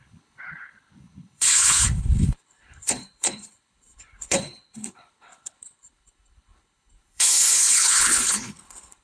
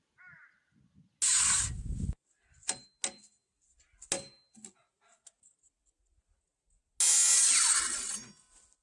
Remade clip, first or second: first